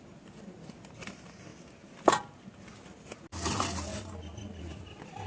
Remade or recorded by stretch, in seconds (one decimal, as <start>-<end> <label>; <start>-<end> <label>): 0.0-1.5 remade; 1.5-3.5 recorded; 3.5-5.3 remade